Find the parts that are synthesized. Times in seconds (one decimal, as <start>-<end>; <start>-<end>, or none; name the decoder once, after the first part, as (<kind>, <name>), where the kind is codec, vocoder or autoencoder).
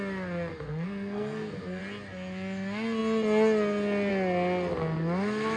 0.5-1.8 (codec, SNAC)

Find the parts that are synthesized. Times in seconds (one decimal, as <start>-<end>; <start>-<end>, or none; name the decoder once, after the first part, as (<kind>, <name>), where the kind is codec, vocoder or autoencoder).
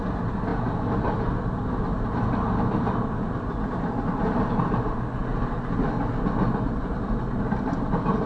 none